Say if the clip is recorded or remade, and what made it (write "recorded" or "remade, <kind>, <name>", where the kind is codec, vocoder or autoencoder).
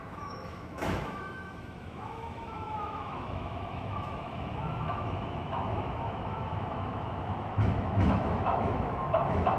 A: remade, autoencoder, DAC-VAE